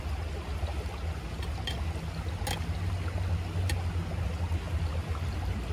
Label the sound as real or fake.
real